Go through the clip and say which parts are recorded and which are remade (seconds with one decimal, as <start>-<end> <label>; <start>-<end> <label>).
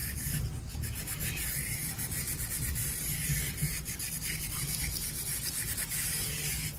0.0-6.8 recorded